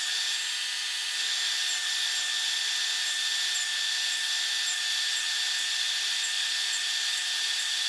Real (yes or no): yes